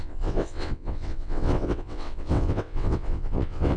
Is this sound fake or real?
fake